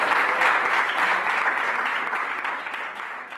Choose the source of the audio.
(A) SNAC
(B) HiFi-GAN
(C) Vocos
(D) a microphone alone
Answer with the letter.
D